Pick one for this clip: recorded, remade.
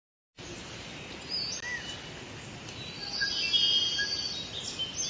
recorded